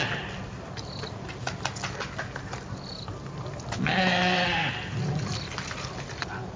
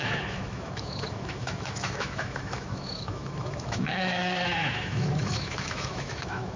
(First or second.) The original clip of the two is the first